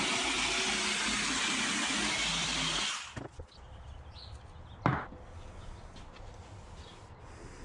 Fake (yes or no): no